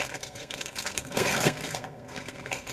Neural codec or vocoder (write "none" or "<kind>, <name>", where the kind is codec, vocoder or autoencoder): codec, SNAC